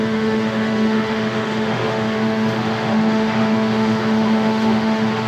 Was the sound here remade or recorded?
remade